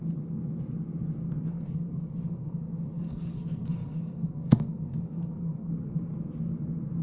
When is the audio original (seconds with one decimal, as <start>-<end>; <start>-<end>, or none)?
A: 0.0-1.5; 5.7-7.0